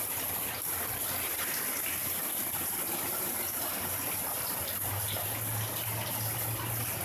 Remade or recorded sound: recorded